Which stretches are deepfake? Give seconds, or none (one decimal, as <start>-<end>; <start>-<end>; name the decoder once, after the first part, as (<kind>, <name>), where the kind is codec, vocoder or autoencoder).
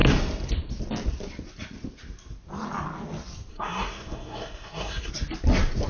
3.5-5.1 (codec, SNAC)